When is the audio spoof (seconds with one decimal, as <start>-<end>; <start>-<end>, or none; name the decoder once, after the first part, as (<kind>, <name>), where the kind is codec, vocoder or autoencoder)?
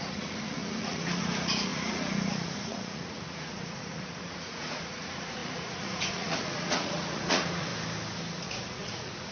0.0-7.7 (vocoder, Vocos); 8.4-9.3